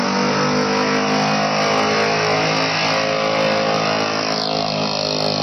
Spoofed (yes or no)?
no